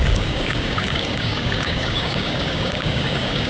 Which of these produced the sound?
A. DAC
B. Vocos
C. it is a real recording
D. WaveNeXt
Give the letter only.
A